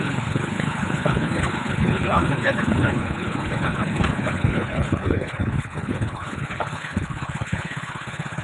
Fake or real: fake